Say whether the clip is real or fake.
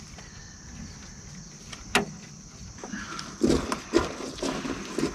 real